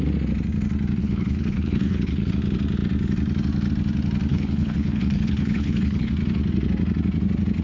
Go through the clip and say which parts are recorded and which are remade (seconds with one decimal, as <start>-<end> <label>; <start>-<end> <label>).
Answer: 0.0-1.0 recorded; 1.0-2.3 remade; 2.3-4.3 recorded; 4.3-6.1 remade; 6.1-7.6 recorded